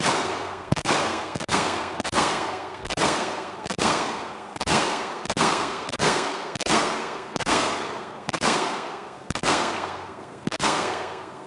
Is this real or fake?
fake